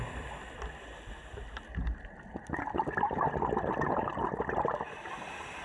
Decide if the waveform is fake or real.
real